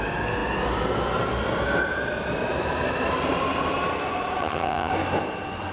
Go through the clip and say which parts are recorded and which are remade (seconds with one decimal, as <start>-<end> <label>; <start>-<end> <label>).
0.0-4.4 recorded; 4.4-4.9 remade; 4.9-5.7 recorded